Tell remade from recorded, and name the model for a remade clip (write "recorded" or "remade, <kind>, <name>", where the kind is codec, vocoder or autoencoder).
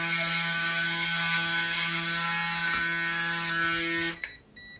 recorded